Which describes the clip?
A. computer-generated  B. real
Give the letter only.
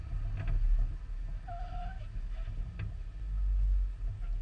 B